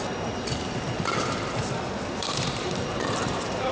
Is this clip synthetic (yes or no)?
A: yes